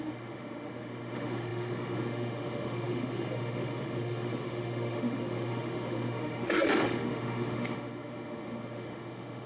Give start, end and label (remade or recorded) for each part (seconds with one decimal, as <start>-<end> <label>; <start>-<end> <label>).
0.0-9.5 remade